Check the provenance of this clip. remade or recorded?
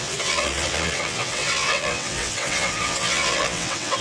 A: remade